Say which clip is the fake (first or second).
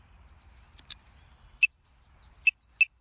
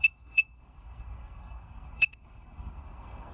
second